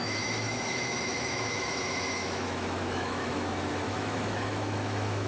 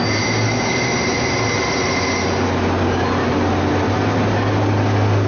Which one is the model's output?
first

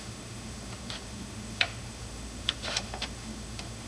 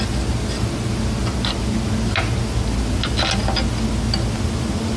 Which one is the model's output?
first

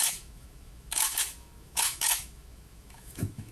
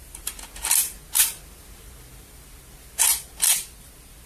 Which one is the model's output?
first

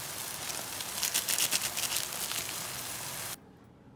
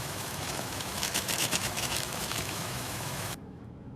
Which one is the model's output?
second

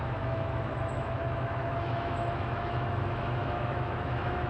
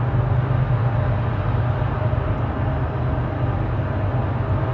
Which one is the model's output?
first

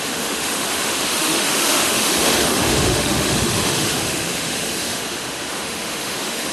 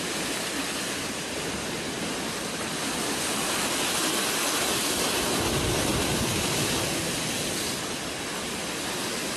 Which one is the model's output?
first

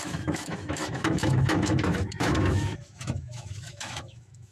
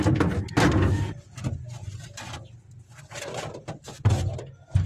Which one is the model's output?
first